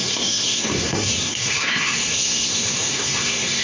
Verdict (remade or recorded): remade